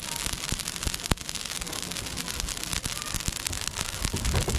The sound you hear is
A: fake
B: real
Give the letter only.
B